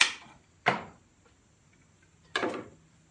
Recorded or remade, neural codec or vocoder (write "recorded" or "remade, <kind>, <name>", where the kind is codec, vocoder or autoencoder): recorded